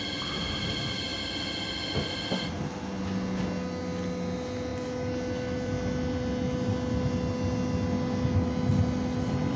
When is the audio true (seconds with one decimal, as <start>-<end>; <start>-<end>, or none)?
0.0-9.6